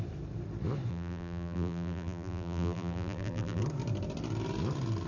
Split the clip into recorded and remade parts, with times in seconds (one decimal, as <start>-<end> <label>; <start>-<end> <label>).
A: 0.0-0.9 recorded; 0.9-3.6 remade; 3.6-5.1 recorded